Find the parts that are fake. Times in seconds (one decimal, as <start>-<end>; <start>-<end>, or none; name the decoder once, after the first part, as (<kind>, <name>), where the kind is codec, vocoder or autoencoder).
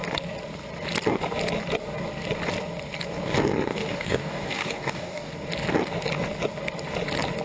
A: 3.7-5.3 (codec, DAC)